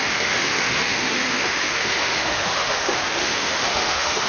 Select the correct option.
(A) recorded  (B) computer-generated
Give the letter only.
B